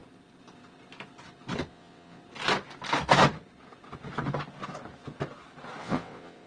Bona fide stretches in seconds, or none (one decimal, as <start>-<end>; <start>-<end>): 0.0-1.7; 2.2-5.8